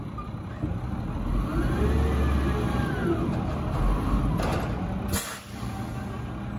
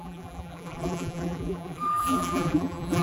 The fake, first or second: second